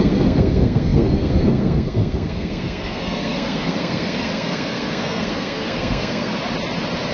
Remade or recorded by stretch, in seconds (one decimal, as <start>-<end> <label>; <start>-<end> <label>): 0.0-6.4 remade; 6.4-7.1 recorded